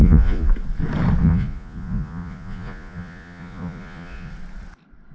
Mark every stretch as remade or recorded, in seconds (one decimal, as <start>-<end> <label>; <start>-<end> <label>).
0.0-0.5 remade; 0.5-1.2 recorded; 1.2-4.3 remade; 4.3-5.1 recorded